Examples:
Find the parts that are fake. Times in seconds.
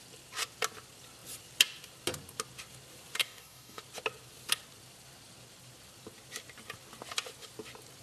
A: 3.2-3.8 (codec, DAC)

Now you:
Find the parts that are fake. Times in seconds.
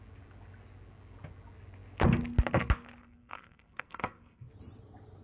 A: 3.0-4.5 (codec, SNAC)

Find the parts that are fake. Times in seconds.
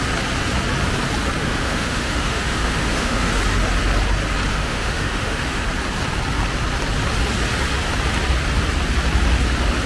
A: 1.4-3.3 (autoencoder, DAC-VAE); 4.5-5.6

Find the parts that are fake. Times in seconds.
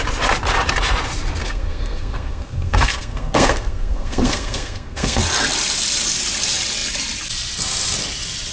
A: 1.4-5.2 (codec, SNAC)